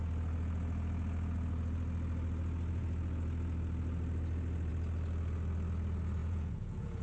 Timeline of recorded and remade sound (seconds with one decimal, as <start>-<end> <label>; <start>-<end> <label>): 0.0-6.2 recorded; 6.2-7.0 remade